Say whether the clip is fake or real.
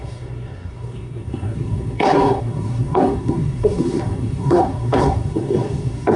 fake